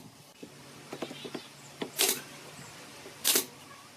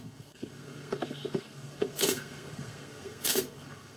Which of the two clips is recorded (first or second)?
first